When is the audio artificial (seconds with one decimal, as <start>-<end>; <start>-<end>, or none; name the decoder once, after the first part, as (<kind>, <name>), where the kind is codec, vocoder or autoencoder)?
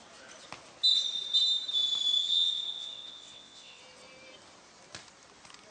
2.2-3.8 (vocoder, WaveNeXt)